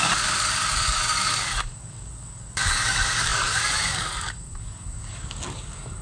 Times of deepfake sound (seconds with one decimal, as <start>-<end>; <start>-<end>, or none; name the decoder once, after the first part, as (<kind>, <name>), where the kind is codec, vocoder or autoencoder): 0.0-6.0 (codec, DAC)